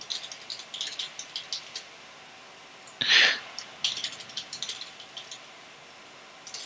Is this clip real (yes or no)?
yes